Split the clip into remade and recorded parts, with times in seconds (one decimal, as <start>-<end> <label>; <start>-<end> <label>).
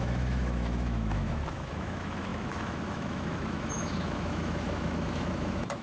0.0-5.8 remade